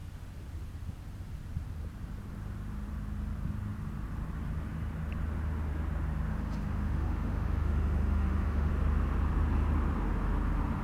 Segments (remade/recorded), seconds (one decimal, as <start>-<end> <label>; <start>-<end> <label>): 0.0-6.3 recorded; 6.3-8.7 remade; 8.7-10.8 recorded